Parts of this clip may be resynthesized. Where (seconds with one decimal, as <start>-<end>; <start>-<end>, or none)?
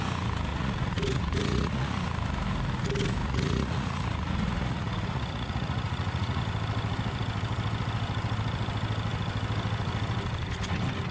0.5-2.0; 3.2-6.4